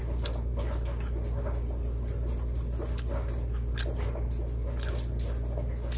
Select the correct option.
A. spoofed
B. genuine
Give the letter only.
B